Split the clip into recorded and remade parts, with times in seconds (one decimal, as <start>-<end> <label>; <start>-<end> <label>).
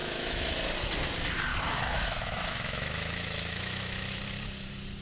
0.0-0.5 remade; 0.5-1.5 recorded; 1.5-4.2 remade; 4.2-5.0 recorded